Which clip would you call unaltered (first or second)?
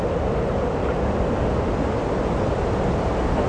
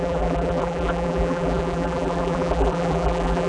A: first